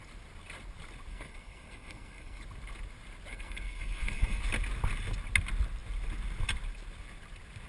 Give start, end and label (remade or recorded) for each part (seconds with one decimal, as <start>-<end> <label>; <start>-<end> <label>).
0.0-1.1 recorded; 1.1-2.4 remade; 2.4-3.3 recorded; 3.3-4.4 remade; 4.4-7.7 recorded